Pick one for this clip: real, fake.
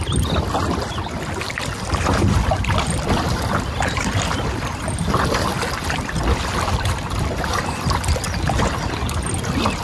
real